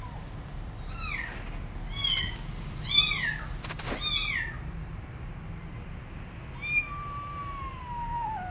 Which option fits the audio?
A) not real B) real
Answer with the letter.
B